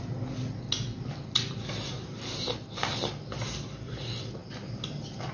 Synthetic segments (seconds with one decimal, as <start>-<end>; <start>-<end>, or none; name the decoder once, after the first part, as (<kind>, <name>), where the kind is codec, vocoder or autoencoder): none